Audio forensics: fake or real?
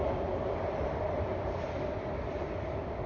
real